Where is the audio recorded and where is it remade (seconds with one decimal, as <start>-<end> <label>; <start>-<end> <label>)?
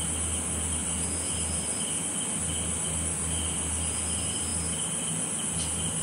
0.0-6.0 recorded